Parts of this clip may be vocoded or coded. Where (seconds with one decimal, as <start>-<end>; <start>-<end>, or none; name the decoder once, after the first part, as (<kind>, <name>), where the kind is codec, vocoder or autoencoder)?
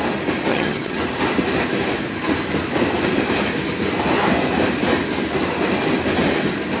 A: 0.5-1.0 (vocoder, HiFi-GAN)